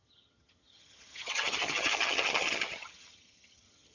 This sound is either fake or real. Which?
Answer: fake